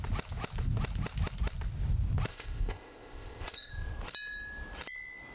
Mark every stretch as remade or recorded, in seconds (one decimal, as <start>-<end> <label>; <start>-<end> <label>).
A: 0.0-2.3 recorded; 2.3-3.7 remade; 3.7-5.3 recorded